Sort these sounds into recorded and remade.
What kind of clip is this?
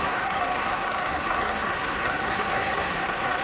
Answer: remade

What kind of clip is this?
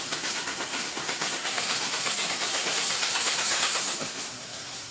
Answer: remade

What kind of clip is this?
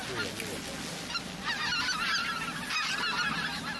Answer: recorded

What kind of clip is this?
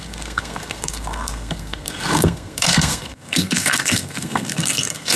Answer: remade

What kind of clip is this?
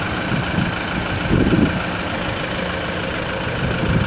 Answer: recorded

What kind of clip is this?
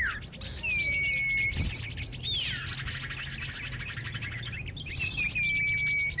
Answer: recorded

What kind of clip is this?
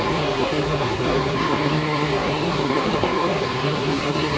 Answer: remade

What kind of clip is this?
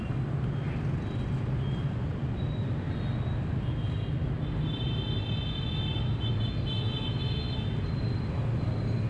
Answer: recorded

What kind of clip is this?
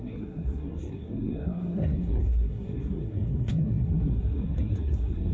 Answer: remade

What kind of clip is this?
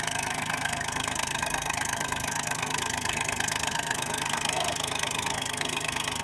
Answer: remade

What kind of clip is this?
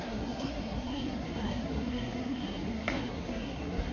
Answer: remade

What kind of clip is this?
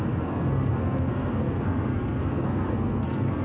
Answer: remade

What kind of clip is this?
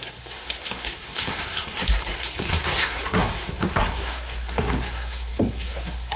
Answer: remade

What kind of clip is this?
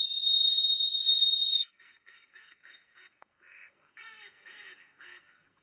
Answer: remade